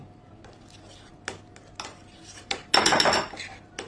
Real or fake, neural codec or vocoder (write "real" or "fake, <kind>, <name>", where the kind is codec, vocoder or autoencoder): real